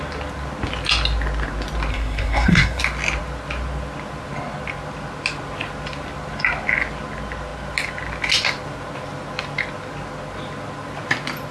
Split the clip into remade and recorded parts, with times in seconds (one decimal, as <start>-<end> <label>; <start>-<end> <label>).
0.0-1.9 recorded; 1.9-2.8 remade; 2.8-11.5 recorded